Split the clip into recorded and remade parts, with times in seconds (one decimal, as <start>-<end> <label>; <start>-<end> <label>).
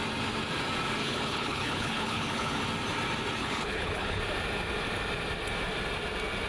0.0-1.0 recorded; 1.0-2.6 remade; 2.6-3.4 recorded; 3.4-4.2 remade; 4.2-6.5 recorded